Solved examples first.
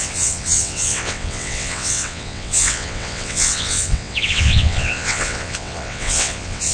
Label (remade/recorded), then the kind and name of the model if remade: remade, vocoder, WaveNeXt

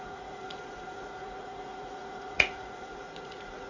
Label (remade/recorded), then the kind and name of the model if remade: remade, vocoder, Vocos